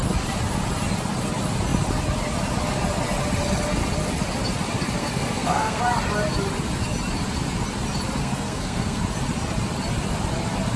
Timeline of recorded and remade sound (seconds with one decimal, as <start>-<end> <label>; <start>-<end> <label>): 0.0-5.0 recorded; 5.0-5.8 remade; 5.8-8.2 recorded; 8.2-9.0 remade; 9.0-10.8 recorded

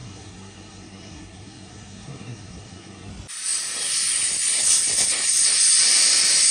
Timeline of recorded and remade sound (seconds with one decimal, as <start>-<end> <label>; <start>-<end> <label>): 0.0-3.1 remade; 3.1-6.5 recorded

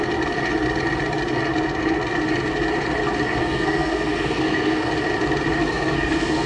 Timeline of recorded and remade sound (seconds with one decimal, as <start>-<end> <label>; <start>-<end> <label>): 0.0-3.4 recorded; 3.4-4.9 remade; 4.9-5.6 recorded; 5.6-6.5 remade